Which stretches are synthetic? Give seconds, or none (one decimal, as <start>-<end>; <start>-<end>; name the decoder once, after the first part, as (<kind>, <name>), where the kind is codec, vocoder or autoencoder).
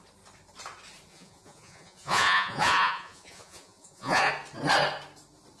1.1-4.3 (vocoder, Vocos)